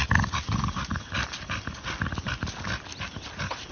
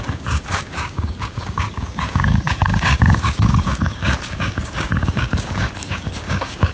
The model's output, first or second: second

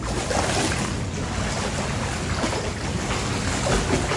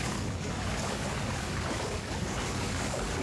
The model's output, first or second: second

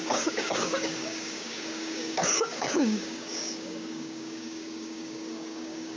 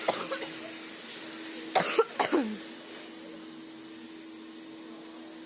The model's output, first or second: first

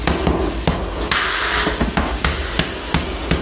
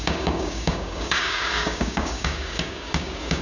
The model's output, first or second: second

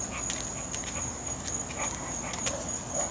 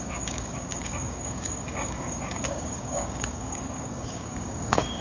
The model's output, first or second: second